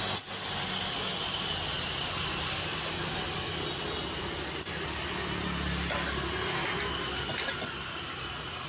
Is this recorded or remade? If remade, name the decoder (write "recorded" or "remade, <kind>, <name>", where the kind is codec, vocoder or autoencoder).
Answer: recorded